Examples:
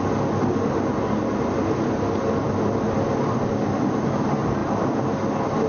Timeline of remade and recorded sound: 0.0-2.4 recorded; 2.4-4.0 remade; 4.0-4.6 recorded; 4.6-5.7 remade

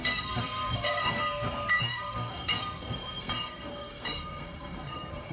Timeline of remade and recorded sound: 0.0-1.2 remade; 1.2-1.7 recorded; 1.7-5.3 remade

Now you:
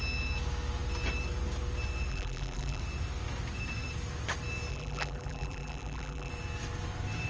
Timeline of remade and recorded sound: 0.0-2.1 recorded; 2.1-2.8 remade; 2.8-4.7 recorded; 4.7-6.3 remade; 6.3-7.3 recorded

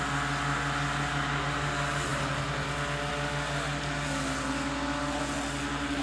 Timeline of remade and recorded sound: 0.0-6.0 recorded

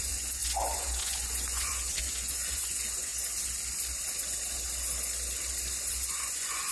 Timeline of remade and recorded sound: 0.0-3.1 remade; 3.1-5.8 recorded; 5.8-6.7 remade

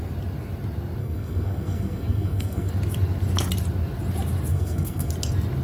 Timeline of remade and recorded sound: 0.0-1.0 recorded; 1.0-2.7 remade; 2.7-4.5 recorded; 4.5-5.1 remade; 5.1-5.6 recorded